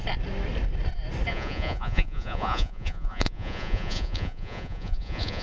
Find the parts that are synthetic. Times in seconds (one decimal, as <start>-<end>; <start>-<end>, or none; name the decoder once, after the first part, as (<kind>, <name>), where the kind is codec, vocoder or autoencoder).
1.3-5.4 (vocoder, Vocos)